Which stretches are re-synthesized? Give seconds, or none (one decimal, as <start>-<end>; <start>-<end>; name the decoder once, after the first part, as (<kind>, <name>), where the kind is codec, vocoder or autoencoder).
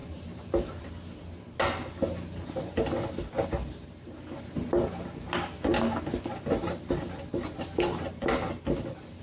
0.0-0.8 (vocoder, BigVGAN v2)